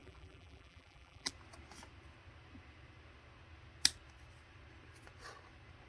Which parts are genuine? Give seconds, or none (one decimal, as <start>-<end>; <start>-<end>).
1.3-5.9